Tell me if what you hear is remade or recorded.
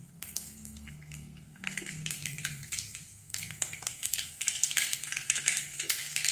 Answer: remade